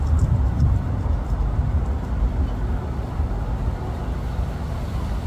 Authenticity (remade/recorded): recorded